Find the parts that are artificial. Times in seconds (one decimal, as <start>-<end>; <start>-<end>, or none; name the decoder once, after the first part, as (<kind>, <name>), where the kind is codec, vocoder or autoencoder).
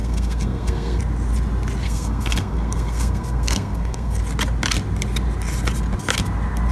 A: 0.0-1.0 (codec, SNAC); 1.8-4.2